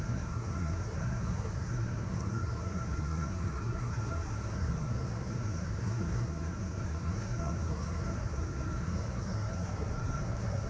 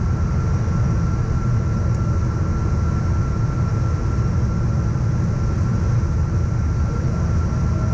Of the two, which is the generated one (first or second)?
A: first